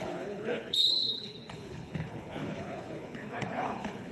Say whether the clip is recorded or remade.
remade